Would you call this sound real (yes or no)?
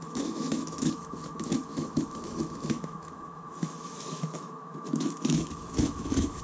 no